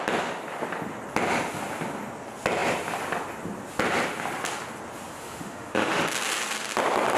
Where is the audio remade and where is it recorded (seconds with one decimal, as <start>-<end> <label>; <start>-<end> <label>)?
0.0-5.2 recorded; 5.2-6.0 remade; 6.0-7.2 recorded